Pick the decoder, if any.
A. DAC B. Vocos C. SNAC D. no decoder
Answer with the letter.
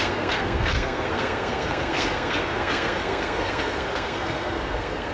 C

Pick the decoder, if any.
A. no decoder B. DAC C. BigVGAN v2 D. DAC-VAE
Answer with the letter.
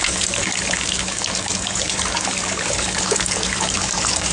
B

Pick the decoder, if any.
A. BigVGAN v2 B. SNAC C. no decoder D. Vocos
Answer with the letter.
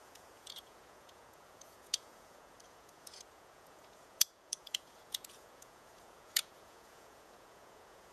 D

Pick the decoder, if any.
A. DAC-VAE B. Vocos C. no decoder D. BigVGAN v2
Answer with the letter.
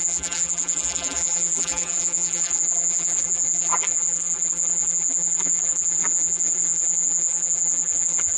D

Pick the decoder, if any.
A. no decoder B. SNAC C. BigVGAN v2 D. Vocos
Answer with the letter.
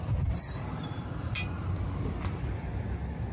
C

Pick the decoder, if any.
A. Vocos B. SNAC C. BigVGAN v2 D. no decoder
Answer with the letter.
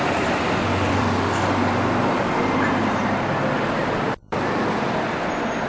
C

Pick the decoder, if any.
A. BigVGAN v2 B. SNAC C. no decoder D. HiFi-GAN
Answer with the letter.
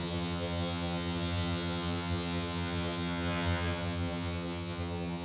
D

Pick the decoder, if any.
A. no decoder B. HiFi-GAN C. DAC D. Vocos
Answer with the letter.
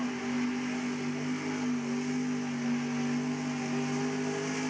A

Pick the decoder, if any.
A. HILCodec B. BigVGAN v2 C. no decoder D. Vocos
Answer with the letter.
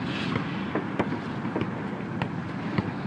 B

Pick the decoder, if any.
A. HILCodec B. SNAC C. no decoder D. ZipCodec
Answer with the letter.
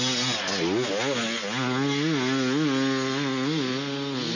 C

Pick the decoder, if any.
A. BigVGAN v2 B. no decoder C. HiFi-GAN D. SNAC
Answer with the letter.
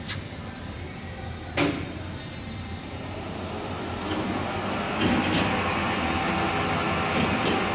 B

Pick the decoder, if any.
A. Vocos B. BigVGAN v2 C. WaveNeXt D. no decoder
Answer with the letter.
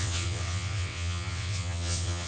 C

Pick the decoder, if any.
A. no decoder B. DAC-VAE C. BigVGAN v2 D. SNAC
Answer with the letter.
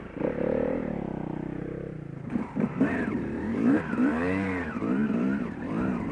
C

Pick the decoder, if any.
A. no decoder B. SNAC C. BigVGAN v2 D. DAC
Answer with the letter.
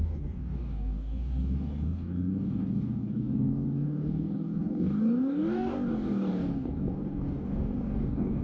D